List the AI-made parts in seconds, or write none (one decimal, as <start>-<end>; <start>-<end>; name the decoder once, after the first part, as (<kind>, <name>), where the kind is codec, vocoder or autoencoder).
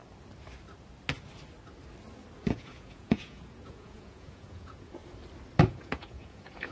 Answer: 2.5-5.0 (vocoder, Vocos); 5.6-6.7